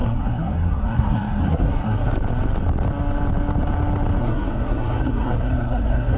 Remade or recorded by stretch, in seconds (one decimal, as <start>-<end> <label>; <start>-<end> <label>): 0.0-2.1 remade; 2.1-4.2 recorded; 4.2-6.2 remade

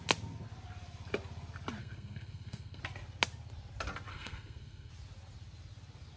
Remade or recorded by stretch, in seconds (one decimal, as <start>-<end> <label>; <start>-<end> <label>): 0.0-1.8 recorded; 1.8-2.8 remade; 2.8-4.1 recorded; 4.1-4.9 remade; 4.9-6.2 recorded

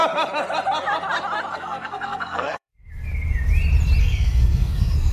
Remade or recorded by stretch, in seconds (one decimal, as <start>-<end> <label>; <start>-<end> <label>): 0.0-1.5 recorded; 1.5-2.7 remade; 2.7-4.0 recorded; 4.0-5.1 remade

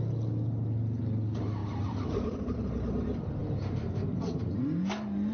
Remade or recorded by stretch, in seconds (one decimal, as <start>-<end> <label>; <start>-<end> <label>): 0.0-1.6 recorded; 1.6-2.9 remade; 2.9-3.4 recorded; 3.4-4.5 remade; 4.5-5.3 recorded

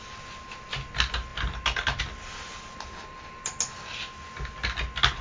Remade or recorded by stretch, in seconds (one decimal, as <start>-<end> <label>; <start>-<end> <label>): 0.0-5.2 recorded

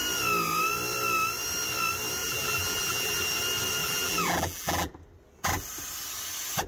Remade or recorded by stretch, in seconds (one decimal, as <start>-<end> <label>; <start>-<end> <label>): 0.0-2.2 recorded; 2.2-3.2 remade; 3.2-3.8 recorded; 3.8-4.9 remade; 4.9-6.7 recorded